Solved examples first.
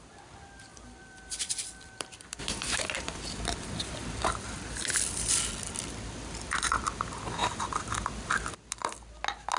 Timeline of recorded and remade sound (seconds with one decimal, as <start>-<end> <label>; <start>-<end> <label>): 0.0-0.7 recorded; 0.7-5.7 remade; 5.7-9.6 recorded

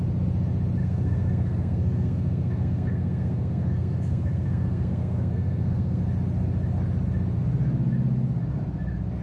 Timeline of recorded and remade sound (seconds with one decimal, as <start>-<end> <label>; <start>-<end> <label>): 0.0-0.8 recorded; 0.8-6.0 remade; 6.0-9.2 recorded

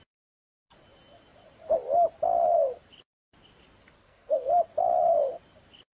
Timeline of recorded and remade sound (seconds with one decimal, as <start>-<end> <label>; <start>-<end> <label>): 0.0-4.0 recorded; 4.0-4.5 remade; 4.5-6.0 recorded

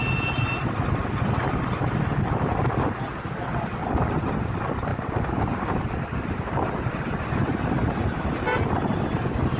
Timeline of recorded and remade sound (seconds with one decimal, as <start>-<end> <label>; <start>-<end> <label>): 0.0-9.6 recorded